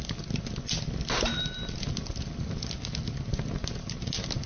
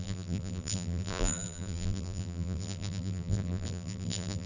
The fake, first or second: second